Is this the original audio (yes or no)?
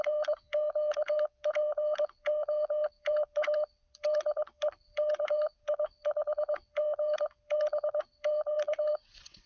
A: no